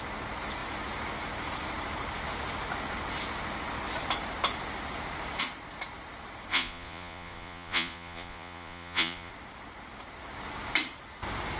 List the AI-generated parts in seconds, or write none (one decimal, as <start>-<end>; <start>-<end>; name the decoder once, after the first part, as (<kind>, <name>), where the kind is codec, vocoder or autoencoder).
6.5-9.3 (vocoder, Vocos)